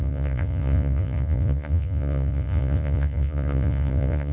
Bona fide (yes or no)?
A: no